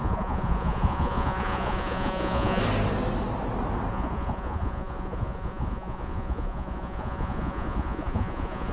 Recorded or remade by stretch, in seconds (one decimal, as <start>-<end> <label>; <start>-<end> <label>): 0.0-2.6 remade; 2.6-3.9 recorded; 3.9-8.7 remade